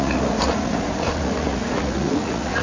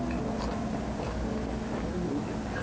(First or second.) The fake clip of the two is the first